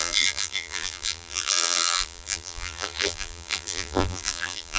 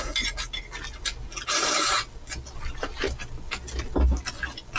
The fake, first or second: first